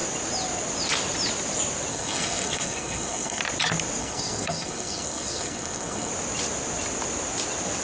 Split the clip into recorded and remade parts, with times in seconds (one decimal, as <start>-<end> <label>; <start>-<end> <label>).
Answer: 0.0-1.9 recorded; 1.9-3.4 remade; 3.4-4.0 recorded; 4.0-6.1 remade; 6.1-7.8 recorded